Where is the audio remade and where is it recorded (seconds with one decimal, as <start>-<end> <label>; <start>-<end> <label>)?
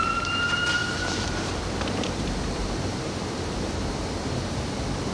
0.0-0.8 recorded; 0.8-3.9 remade; 3.9-5.1 recorded